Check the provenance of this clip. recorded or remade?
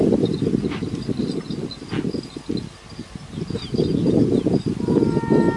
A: recorded